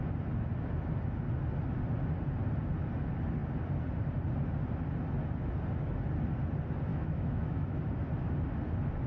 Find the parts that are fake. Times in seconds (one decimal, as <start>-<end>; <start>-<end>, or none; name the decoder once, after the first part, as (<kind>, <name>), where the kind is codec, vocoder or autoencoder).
6.9-7.8 (autoencoder, DAC-VAE)

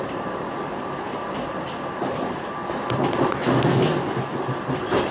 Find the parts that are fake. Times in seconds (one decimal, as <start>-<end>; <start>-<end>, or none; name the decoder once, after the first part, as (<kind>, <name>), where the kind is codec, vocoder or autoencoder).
none

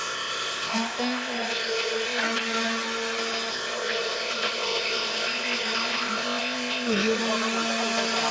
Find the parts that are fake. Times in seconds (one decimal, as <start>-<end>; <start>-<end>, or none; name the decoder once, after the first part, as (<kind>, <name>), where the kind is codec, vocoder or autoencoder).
0.0-2.2 (codec, ZipCodec); 3.5-7.2

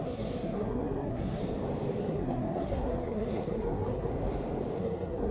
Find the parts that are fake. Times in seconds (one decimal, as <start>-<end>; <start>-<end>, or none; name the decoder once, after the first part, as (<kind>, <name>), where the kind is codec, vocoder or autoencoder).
0.0-1.4 (codec, SNAC); 2.0-4.1; 4.8-5.3

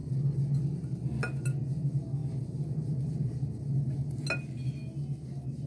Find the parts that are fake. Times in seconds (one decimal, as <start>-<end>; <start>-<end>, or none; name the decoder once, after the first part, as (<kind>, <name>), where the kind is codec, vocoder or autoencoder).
0.0-0.6 (vocoder, BigVGAN v2); 2.2-4.2

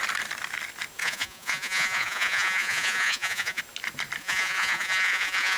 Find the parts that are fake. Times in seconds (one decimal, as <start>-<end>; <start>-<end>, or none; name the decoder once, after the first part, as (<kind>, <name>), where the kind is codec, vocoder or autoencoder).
1.0-3.6 (vocoder, Vocos); 4.2-5.6

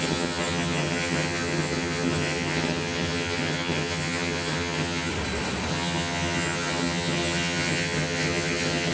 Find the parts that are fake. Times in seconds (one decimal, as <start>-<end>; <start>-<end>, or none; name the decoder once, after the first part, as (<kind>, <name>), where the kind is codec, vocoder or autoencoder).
0.0-5.1 (vocoder, HiFi-GAN); 5.7-8.9

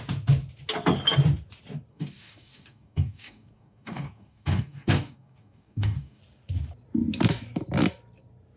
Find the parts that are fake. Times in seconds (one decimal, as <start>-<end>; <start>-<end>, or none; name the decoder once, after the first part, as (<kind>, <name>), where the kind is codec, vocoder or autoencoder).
1.9-6.2 (codec, DAC)